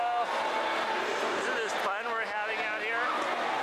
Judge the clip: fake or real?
real